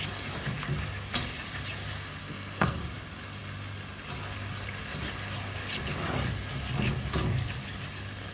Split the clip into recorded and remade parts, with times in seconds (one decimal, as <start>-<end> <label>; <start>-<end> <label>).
0.0-2.2 recorded; 2.2-2.8 remade; 2.8-8.3 recorded